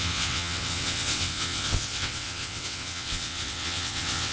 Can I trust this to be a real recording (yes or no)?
no